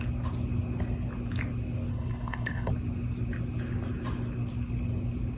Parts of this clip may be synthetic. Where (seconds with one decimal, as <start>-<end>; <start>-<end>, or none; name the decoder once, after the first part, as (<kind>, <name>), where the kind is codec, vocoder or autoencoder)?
1.9-2.7 (codec, HILCodec)